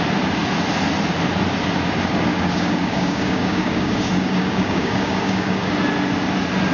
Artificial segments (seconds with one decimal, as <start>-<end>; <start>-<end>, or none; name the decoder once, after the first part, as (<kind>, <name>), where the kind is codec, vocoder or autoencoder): 2.3-5.7 (codec, DAC)